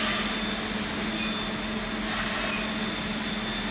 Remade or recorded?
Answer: recorded